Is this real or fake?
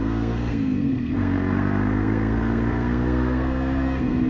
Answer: fake